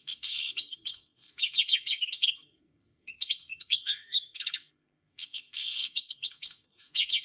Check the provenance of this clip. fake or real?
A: fake